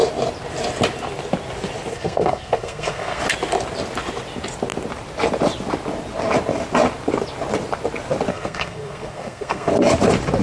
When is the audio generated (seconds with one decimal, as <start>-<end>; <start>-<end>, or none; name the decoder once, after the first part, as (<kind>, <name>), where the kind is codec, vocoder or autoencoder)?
1.9-3.2 (codec, SNAC); 8.3-9.7